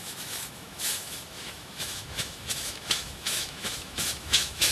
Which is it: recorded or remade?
remade